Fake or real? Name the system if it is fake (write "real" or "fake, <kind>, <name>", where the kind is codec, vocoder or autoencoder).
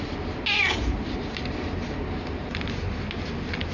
real